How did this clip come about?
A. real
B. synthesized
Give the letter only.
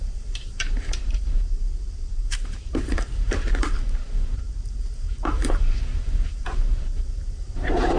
B